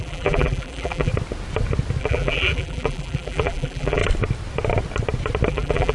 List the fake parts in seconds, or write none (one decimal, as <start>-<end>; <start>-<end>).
0.0-1.1; 2.0-4.0; 5.5-5.9